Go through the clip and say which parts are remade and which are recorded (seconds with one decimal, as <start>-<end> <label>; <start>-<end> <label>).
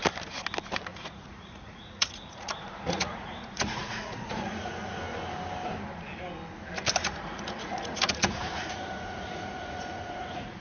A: 0.0-0.9 recorded; 0.9-5.0 remade; 5.0-7.0 recorded; 7.0-10.6 remade